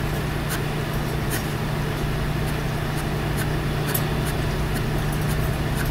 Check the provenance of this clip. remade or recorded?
recorded